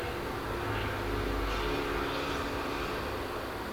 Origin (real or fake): real